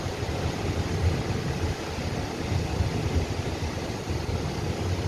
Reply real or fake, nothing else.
real